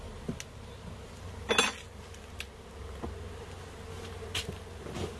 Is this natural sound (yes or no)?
yes